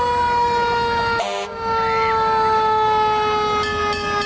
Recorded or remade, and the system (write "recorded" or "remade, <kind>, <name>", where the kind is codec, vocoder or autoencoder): recorded